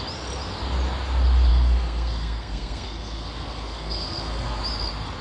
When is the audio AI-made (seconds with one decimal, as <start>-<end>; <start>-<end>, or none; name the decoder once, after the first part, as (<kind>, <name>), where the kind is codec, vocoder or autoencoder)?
1.5-4.6 (codec, SNAC)